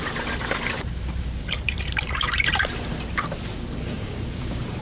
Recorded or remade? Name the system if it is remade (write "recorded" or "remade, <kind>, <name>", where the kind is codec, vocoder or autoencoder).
remade, vocoder, BigVGAN v2